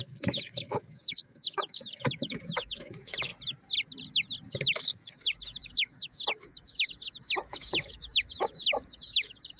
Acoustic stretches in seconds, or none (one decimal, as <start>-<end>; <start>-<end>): 3.3-4.5